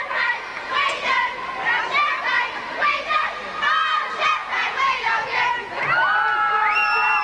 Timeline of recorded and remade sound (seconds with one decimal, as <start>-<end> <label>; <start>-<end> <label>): 0.0-0.5 recorded; 0.5-1.3 remade; 1.3-4.4 recorded; 4.4-5.8 remade; 5.8-7.2 recorded